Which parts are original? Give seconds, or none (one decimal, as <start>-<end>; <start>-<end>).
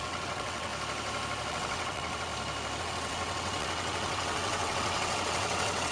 0.7-1.5; 2.3-2.8